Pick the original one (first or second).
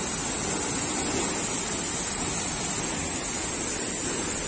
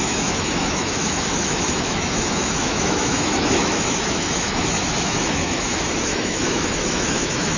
first